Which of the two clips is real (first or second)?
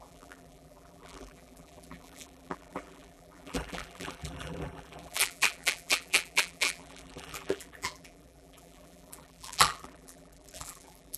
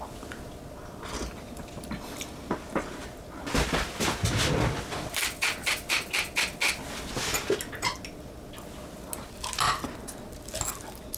second